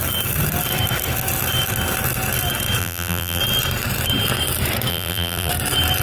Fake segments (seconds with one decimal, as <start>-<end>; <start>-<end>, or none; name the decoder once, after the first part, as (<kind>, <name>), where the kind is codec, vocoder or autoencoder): 2.8-3.4 (vocoder, BigVGAN v2); 4.9-5.5